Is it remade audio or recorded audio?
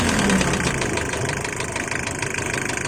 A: remade